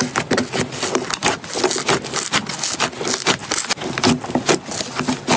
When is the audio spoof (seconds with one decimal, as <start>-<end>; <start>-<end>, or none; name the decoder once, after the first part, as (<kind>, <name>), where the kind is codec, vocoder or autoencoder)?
none